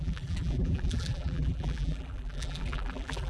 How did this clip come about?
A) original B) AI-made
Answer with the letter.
B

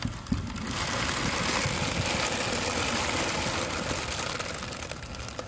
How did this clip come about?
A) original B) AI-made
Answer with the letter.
A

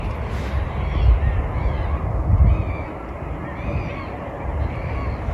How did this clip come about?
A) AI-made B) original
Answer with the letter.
B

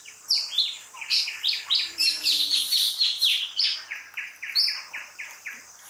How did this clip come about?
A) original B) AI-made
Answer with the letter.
B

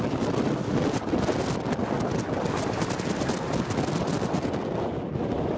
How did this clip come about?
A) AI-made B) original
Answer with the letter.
B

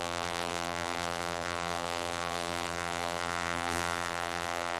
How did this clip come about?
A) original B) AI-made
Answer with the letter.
B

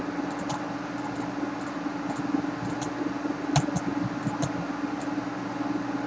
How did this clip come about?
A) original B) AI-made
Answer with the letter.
A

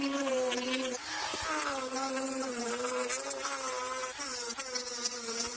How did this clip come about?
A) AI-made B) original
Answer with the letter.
A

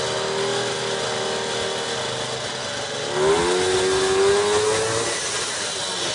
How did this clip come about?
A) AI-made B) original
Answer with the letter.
B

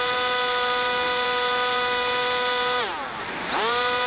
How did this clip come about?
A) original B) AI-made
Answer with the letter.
B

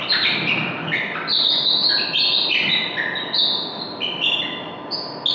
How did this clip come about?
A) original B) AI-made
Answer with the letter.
A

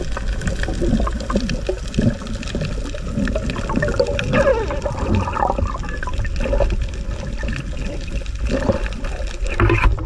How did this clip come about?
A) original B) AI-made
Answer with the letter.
A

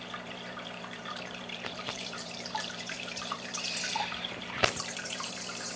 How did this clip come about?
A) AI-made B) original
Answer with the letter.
A